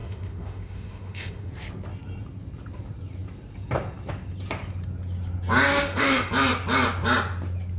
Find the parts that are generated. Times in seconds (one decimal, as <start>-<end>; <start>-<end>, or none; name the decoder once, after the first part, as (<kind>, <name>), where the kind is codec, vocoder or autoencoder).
0.0-1.5 (autoencoder, DAC-VAE); 5.7-6.3